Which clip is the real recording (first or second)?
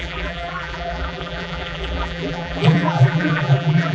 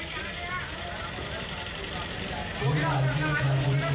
second